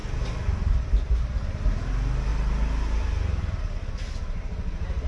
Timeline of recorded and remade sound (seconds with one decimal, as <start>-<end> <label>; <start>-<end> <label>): 0.0-5.1 recorded